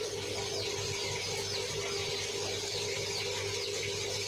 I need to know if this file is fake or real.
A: real